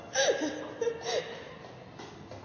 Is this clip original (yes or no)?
yes